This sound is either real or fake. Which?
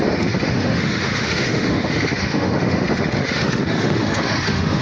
fake